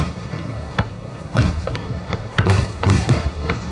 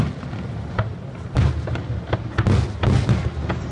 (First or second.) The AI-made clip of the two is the first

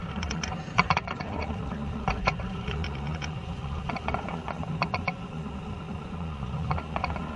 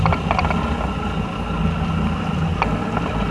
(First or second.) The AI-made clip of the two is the first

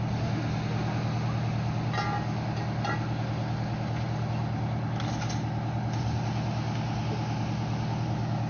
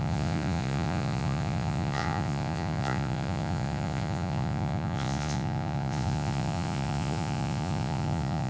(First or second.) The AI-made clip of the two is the second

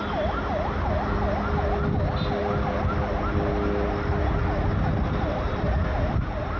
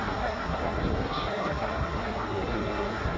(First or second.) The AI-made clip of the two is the second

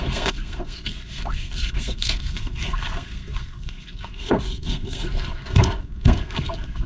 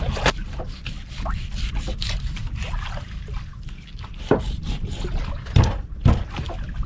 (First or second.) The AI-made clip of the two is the first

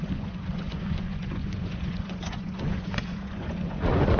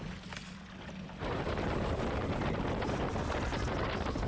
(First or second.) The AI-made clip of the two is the first